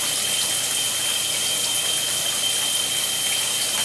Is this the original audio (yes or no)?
yes